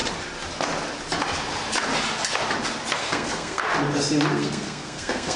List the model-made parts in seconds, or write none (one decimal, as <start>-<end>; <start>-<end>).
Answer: 3.0-3.6; 4.3-5.4